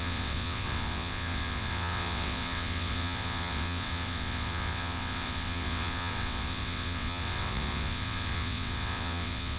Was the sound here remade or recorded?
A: remade